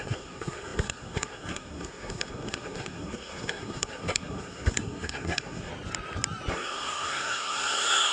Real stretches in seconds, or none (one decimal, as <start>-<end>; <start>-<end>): 5.7-6.5